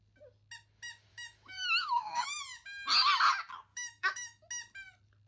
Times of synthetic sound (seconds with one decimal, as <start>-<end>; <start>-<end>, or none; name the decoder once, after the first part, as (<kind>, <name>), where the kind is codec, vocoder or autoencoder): 1.1-2.4 (autoencoder, DAC-VAE); 3.7-4.5